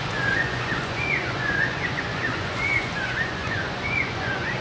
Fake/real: fake